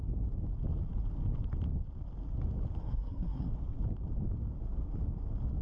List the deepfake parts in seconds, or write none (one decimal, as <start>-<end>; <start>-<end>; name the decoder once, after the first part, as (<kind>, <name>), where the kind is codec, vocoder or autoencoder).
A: 2.8-3.5 (codec, SNAC)